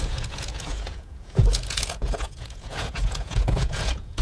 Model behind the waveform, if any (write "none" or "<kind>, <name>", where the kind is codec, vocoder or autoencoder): vocoder, Vocos